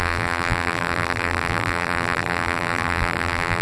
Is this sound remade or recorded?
remade